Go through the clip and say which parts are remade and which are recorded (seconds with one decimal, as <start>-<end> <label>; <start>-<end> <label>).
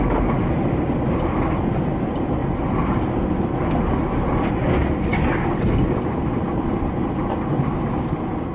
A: 0.0-8.5 recorded